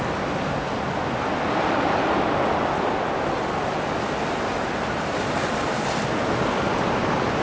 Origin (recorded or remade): recorded